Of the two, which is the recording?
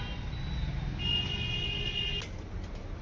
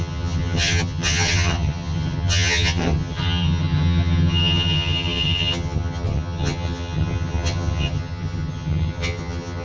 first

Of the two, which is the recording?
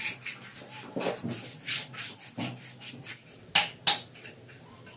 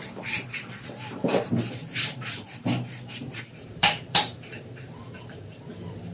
first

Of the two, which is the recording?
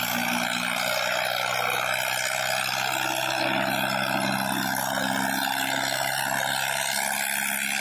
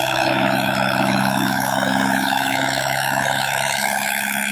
first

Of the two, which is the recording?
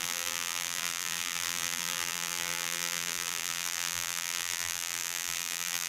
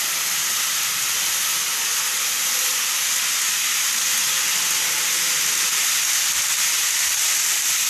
second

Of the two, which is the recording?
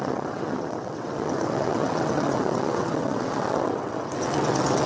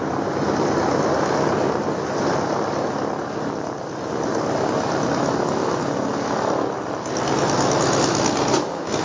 second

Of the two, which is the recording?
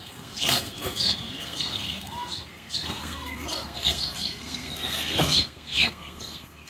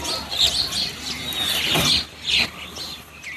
second